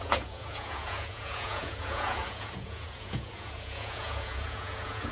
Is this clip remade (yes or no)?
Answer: yes